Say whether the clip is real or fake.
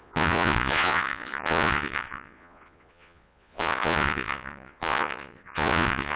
fake